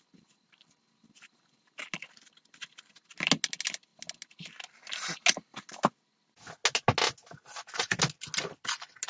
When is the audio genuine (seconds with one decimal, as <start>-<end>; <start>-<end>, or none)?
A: 0.0-9.1